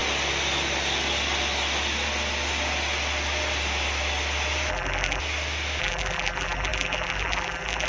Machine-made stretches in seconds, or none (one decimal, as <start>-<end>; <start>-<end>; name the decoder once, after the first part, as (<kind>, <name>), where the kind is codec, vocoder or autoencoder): 4.7-5.2 (vocoder, BigVGAN v2); 5.8-7.9